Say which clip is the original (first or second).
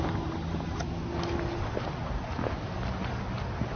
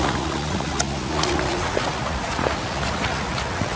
first